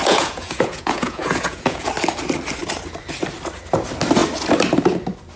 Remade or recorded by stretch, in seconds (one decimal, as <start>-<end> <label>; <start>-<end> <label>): 0.0-1.9 remade; 1.9-5.4 recorded